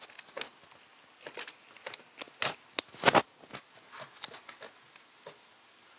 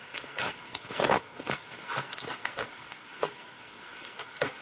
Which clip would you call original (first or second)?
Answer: first